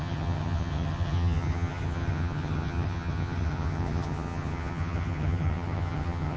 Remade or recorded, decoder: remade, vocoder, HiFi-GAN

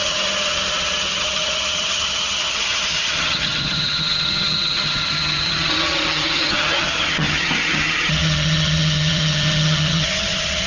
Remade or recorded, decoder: remade, vocoder, HiFi-GAN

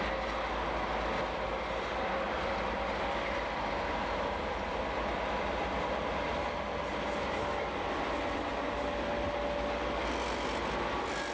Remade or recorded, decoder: recorded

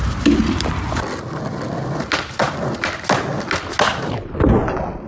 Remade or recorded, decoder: recorded